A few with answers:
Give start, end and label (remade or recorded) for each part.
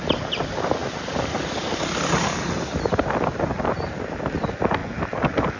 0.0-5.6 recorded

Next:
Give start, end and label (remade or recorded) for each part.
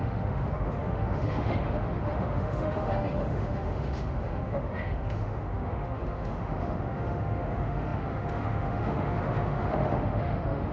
0.0-10.7 remade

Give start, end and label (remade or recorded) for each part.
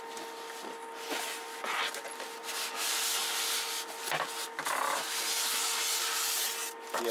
0.0-7.1 recorded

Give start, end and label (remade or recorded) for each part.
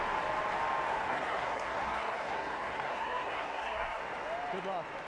0.0-0.9 recorded; 0.9-4.0 remade; 4.0-5.1 recorded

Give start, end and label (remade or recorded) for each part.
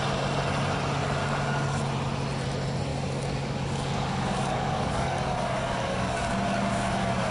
0.0-1.2 recorded; 1.2-1.8 remade; 1.8-2.9 recorded; 2.9-7.3 remade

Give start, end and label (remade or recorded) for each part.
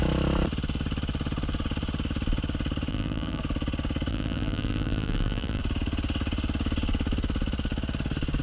0.0-2.9 recorded; 2.9-3.4 remade; 3.4-4.1 recorded; 4.1-5.6 remade; 5.6-8.4 recorded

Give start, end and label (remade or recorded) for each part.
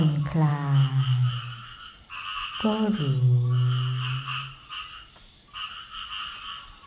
0.0-0.5 recorded; 0.5-1.3 remade; 1.3-6.9 recorded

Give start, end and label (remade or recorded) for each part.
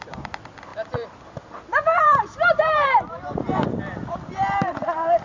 0.0-5.2 remade